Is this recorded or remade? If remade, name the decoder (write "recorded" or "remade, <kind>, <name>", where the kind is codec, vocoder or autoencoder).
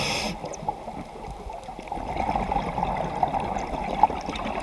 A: recorded